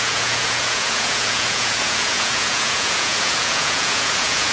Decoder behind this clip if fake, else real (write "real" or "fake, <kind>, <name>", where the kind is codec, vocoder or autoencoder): fake, vocoder, Vocos